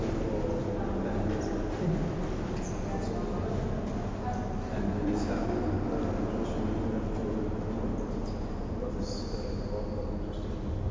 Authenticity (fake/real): real